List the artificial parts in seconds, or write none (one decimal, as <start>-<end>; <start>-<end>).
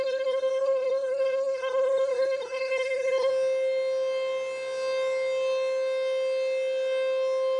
0.0-3.3